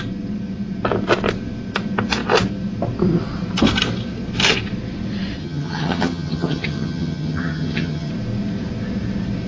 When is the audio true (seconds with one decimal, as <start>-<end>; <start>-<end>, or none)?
0.0-5.4; 8.1-9.5